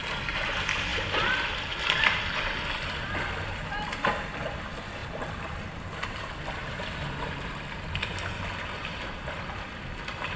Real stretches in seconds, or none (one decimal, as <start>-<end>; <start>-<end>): none